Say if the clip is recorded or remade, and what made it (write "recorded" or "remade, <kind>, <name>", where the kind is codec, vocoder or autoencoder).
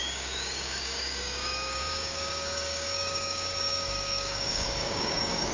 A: remade, codec, DAC